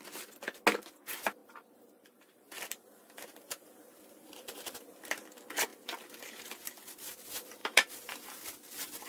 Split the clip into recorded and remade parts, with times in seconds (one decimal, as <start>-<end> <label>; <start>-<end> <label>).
0.0-1.4 recorded; 1.4-5.0 remade; 5.0-5.7 recorded; 5.7-6.4 remade; 6.4-7.6 recorded; 7.6-8.4 remade; 8.4-9.1 recorded